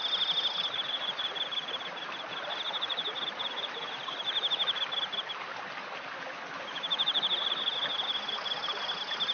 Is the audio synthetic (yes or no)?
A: no